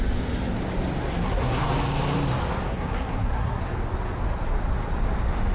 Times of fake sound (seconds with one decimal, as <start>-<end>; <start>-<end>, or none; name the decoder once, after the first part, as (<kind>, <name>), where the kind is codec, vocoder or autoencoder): 1.1-1.6 (codec, SNAC); 2.7-3.6